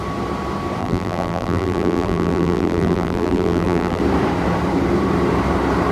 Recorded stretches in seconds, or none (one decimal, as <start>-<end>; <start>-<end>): 0.0-0.8; 4.0-5.9

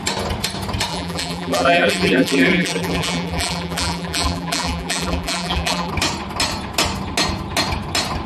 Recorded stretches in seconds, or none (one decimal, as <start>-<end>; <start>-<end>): 0.0-0.9; 5.9-8.3